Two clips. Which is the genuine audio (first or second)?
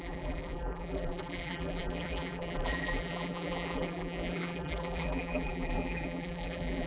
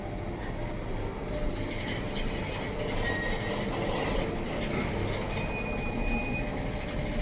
second